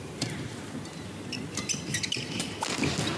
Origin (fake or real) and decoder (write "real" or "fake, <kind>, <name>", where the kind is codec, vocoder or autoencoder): fake, vocoder, BigVGAN v2